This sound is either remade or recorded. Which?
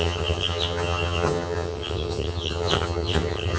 remade